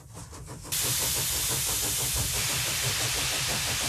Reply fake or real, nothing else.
real